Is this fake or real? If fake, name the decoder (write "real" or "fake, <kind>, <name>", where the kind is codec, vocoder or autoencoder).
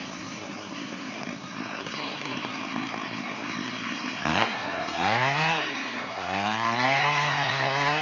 fake, codec, SNAC